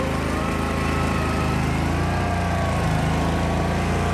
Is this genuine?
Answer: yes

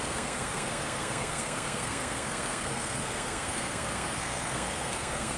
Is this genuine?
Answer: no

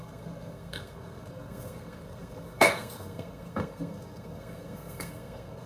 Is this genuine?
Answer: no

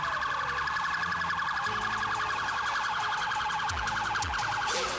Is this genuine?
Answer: yes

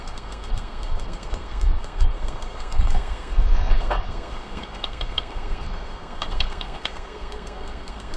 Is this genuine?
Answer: no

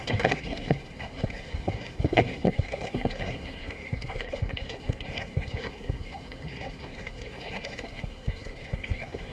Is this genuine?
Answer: no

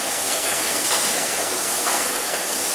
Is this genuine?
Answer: no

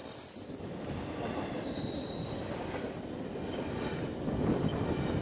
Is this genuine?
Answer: yes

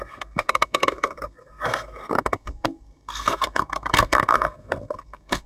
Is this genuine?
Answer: no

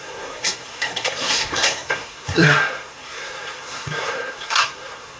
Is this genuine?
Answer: no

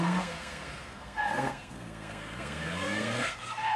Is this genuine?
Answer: no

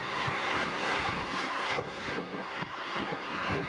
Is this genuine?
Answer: no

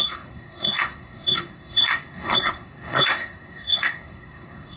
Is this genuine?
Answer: no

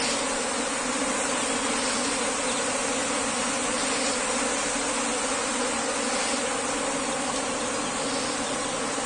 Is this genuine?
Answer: yes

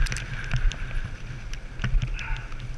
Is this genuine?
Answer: yes